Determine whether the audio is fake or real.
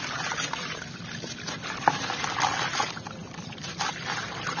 real